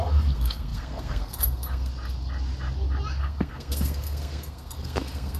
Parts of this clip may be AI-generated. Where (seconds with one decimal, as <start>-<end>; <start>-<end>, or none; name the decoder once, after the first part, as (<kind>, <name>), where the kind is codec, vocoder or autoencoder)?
0.0-1.9 (codec, SNAC); 3.2-5.4